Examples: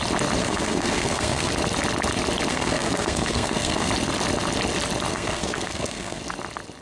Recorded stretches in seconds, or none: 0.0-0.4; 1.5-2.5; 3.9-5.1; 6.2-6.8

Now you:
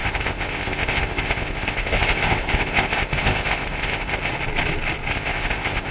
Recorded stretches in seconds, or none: 4.3-5.1

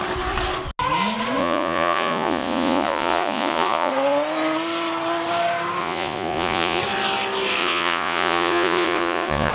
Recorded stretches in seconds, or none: 0.0-1.4; 3.9-5.8; 6.8-7.6

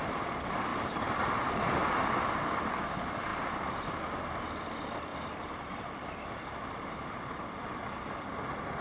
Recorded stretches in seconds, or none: 0.0-0.7; 1.6-5.1; 7.3-8.8

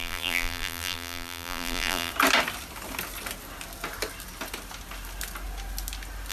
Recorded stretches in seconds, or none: 2.1-6.3

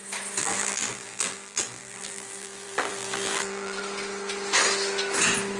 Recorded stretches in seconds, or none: 0.0-0.4; 3.8-5.6

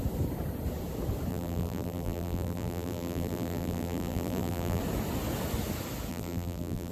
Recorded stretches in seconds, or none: 0.0-1.3; 4.8-6.1

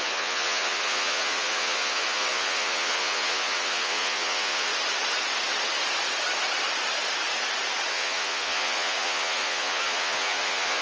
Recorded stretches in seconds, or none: 4.7-7.9